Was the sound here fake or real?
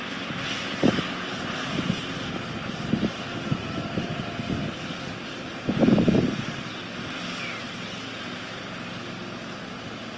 real